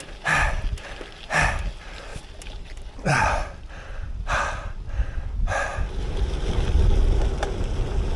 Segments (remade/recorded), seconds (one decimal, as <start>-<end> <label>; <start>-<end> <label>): 0.0-2.1 recorded; 2.1-4.3 remade; 4.3-5.7 recorded; 5.7-6.7 remade; 6.7-8.2 recorded